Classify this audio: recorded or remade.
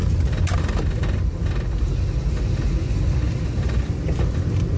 recorded